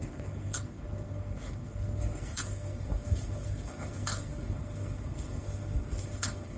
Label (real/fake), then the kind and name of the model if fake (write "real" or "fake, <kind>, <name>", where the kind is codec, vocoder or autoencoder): fake, codec, SNAC